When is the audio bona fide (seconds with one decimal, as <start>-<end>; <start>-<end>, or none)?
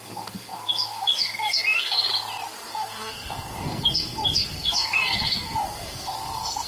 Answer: 2.1-2.7